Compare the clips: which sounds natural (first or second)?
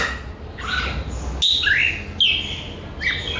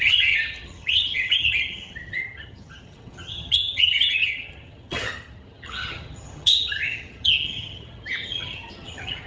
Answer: first